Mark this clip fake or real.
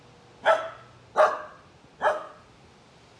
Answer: real